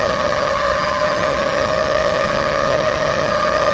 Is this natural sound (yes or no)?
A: no